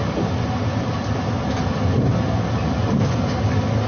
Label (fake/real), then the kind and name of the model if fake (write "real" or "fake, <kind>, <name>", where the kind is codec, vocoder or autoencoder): real